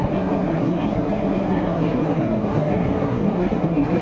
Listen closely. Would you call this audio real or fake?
fake